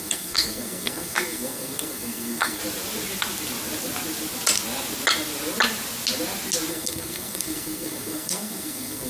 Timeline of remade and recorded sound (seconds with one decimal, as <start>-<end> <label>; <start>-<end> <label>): 0.0-2.6 remade; 2.6-6.7 recorded; 6.7-9.1 remade